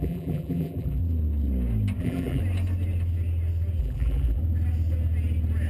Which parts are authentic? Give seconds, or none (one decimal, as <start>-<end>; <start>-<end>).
1.0-2.0; 2.4-3.8; 4.4-5.7